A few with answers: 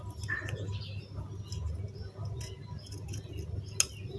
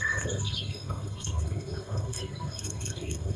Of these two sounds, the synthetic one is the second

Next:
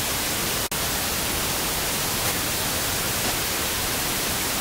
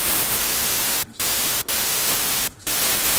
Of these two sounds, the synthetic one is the second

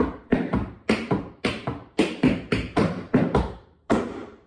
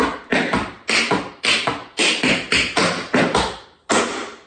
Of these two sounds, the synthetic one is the first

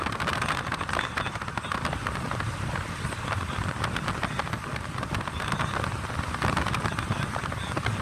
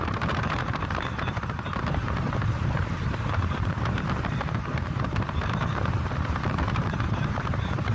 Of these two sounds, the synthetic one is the second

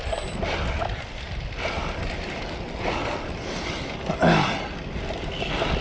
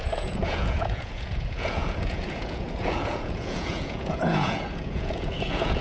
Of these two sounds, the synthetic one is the second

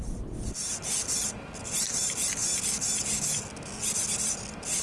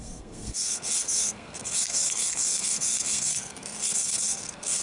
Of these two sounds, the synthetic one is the second